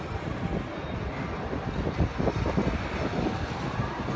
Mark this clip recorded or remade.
recorded